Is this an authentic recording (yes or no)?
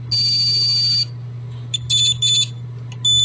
yes